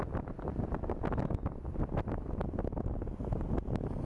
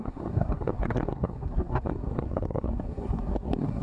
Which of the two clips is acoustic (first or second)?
first